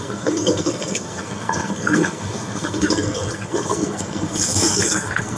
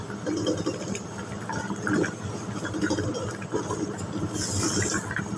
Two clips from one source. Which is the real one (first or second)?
second